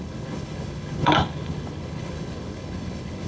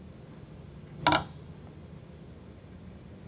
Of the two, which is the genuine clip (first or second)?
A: second